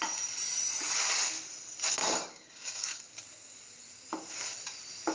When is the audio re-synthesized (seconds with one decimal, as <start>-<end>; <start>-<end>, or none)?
2.0-3.0

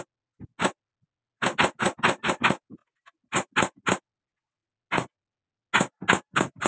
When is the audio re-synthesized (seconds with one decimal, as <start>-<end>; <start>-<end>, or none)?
none